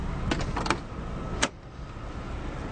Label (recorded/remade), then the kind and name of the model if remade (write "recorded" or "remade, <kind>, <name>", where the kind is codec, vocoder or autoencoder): recorded